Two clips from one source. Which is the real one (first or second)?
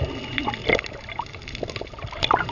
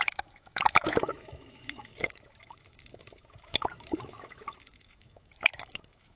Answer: first